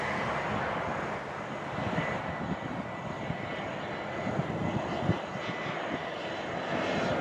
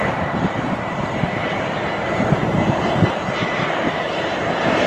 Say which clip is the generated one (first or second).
second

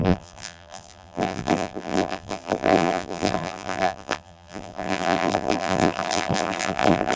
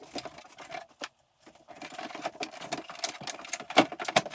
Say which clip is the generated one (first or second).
first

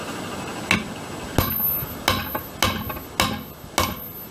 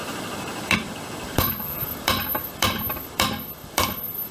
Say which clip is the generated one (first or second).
second